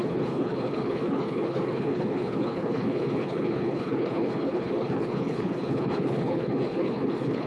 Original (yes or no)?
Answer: no